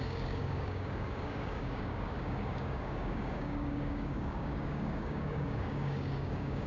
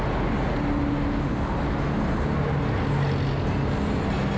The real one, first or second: second